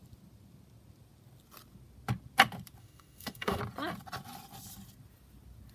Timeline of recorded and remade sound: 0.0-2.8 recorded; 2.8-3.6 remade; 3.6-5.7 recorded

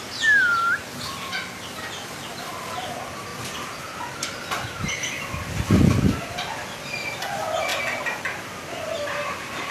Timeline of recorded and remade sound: 0.0-9.7 recorded

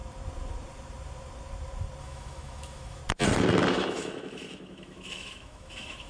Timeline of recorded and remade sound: 0.0-2.0 recorded; 2.0-3.0 remade; 3.0-3.7 recorded; 3.7-6.1 remade

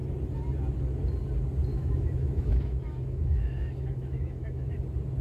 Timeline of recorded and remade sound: 0.0-1.7 recorded; 1.7-4.8 remade; 4.8-5.2 recorded

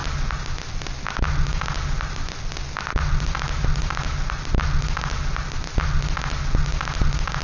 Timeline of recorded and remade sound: 0.0-7.4 recorded